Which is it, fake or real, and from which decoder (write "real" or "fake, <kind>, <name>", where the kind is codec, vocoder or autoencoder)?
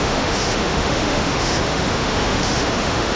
fake, autoencoder, DAC-VAE